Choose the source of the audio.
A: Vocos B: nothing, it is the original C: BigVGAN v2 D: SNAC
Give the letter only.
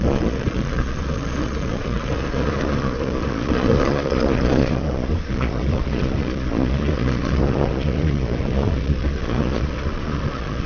A